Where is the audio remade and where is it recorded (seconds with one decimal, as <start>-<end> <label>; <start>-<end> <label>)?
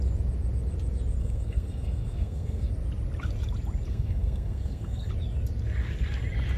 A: 0.0-1.2 recorded; 1.2-2.7 remade; 2.7-3.9 recorded; 3.9-5.1 remade; 5.1-6.6 recorded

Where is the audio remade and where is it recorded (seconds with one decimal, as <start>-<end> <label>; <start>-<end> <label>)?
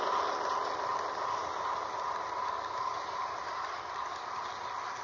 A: 0.0-5.0 recorded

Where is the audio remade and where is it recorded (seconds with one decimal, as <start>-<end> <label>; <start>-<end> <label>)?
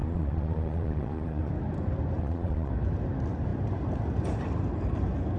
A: 0.0-1.5 remade; 1.5-2.2 recorded; 2.2-2.7 remade; 2.7-5.4 recorded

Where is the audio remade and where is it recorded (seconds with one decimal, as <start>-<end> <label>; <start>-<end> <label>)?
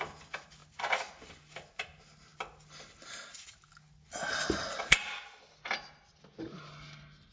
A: 0.0-7.3 recorded